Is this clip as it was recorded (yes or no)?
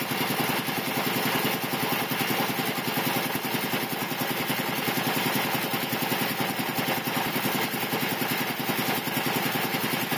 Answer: yes